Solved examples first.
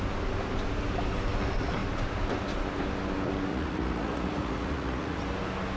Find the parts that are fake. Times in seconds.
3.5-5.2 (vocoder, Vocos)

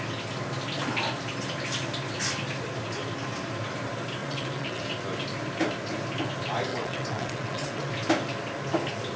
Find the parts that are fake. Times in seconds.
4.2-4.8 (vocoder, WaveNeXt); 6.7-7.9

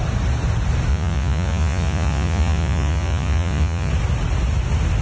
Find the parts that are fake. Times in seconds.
0.9-3.9 (vocoder, Vocos)

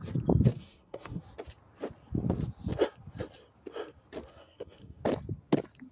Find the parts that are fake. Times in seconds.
0.5-1.2 (codec, SNAC); 4.3-5.0

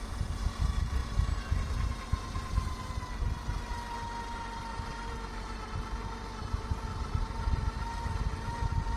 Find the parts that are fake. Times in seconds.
none